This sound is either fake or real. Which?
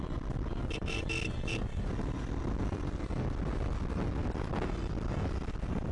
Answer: real